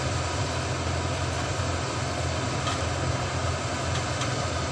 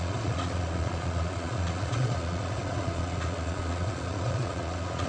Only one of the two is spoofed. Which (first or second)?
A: second